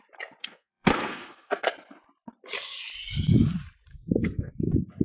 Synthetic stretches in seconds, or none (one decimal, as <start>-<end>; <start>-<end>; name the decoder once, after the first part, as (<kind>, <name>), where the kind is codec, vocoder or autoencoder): 0.4-1.7 (codec, SNAC); 3.9-4.5